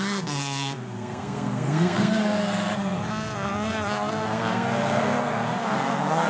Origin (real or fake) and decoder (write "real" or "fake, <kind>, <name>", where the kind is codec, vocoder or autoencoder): fake, codec, SNAC